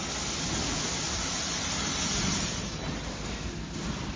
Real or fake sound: real